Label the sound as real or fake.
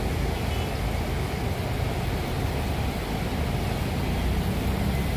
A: real